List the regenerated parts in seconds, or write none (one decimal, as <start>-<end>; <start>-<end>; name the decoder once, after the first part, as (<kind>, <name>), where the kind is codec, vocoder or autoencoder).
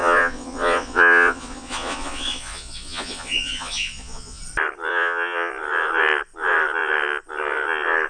0.0-4.4 (vocoder, Vocos); 4.9-5.5